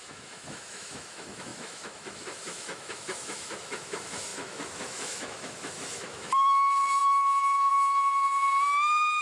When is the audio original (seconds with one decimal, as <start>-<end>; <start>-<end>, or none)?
none